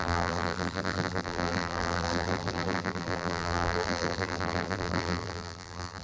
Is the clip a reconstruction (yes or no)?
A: yes